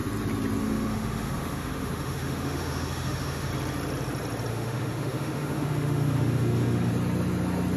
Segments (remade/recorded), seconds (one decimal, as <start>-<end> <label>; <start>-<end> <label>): 0.0-0.6 recorded; 0.6-3.5 remade; 3.5-4.5 recorded; 4.5-6.9 remade; 6.9-7.8 recorded